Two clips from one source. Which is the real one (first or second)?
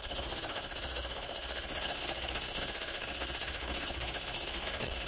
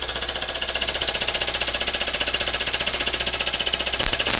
second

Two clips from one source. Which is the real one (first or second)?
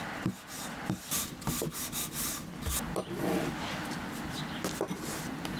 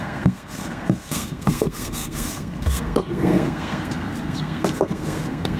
first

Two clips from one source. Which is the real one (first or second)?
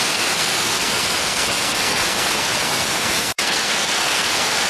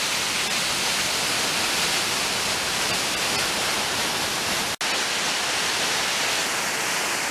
second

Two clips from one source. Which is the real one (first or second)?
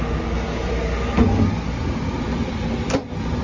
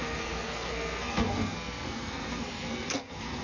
first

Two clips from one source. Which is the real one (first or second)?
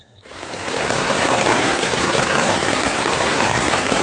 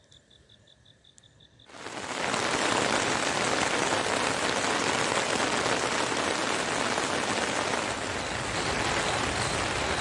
second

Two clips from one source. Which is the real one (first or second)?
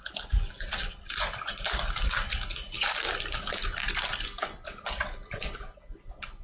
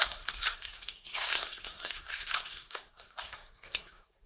first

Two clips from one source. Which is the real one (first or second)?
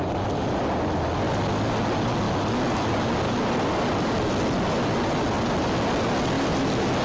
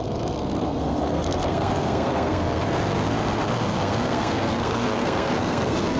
first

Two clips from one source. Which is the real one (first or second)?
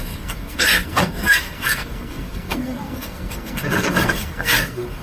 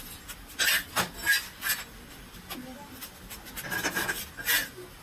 second